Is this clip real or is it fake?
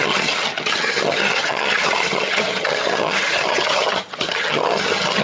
fake